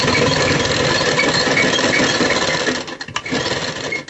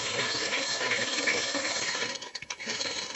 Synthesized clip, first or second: second